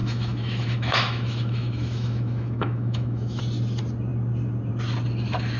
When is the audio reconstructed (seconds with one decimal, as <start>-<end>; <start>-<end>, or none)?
0.0-3.4